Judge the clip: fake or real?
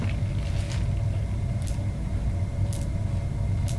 real